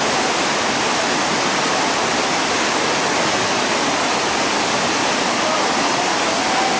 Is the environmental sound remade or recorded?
recorded